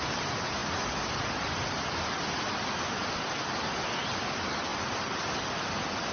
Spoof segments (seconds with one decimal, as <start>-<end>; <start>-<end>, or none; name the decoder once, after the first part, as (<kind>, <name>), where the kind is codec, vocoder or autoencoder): none